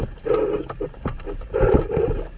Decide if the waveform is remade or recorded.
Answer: recorded